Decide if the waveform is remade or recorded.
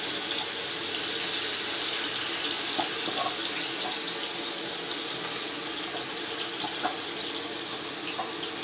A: recorded